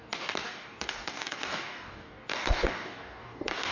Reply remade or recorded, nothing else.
remade